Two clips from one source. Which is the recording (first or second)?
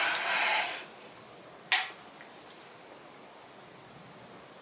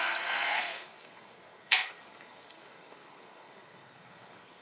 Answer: first